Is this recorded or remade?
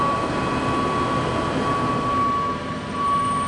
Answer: recorded